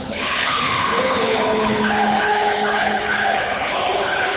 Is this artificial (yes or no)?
yes